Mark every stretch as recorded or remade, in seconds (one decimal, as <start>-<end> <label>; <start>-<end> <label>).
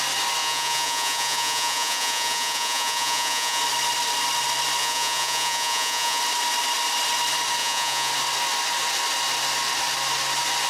0.0-0.4 recorded; 0.4-3.6 remade; 3.6-4.8 recorded; 4.8-6.2 remade; 6.2-7.6 recorded; 7.6-8.1 remade; 8.1-10.7 recorded